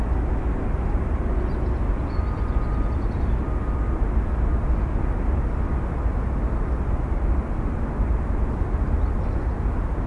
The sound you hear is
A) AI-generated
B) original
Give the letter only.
B